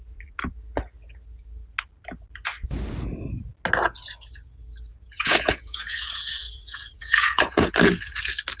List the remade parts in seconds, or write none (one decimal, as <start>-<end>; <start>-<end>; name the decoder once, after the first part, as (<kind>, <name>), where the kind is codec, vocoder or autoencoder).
4.9-7.7 (vocoder, Vocos)